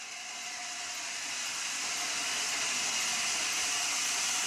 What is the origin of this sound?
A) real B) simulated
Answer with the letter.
A